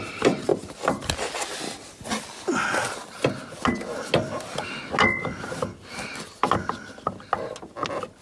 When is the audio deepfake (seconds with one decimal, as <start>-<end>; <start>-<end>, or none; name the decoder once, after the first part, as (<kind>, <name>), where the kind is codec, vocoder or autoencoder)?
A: none